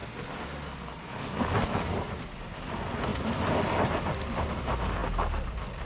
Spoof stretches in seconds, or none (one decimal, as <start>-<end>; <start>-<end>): none